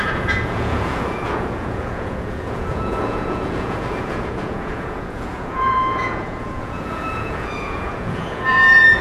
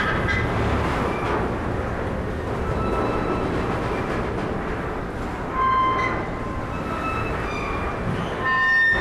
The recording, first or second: second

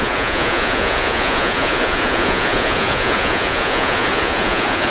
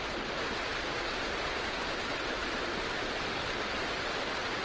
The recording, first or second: second